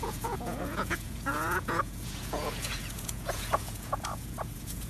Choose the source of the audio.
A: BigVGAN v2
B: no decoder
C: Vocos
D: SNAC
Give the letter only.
C